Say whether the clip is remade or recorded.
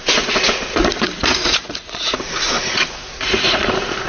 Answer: remade